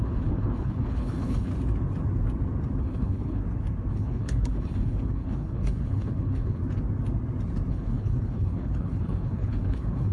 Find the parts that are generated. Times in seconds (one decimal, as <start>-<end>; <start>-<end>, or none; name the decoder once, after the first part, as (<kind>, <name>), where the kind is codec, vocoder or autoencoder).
0.0-1.5 (codec, HILCodec); 2.8-3.4; 3.9-6.6; 7.7-10.1